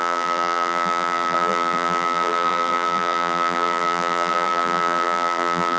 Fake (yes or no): yes